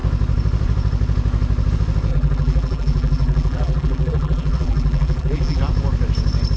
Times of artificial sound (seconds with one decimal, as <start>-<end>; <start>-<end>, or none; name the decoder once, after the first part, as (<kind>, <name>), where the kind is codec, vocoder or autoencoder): 2.1-5.6 (vocoder, BigVGAN v2)